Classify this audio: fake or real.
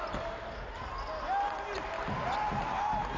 real